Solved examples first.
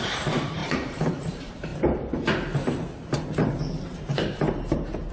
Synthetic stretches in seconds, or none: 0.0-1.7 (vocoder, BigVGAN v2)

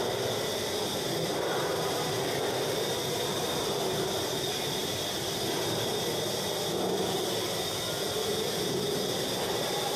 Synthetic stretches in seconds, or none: none

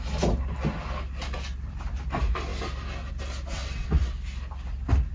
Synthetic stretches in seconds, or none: 3.5-4.1 (vocoder, WaveNeXt)

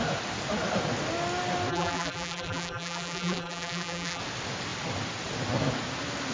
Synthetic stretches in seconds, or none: 1.7-4.2 (vocoder, BigVGAN v2)

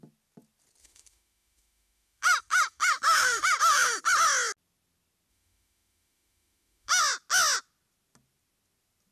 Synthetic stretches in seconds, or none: 0.8-4.0 (autoencoder, DAC-VAE); 5.3-7.0

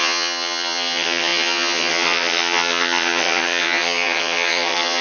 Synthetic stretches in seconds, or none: 0.0-5.0 (vocoder, HiFi-GAN)